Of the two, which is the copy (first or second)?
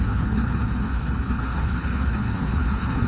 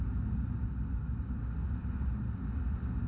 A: first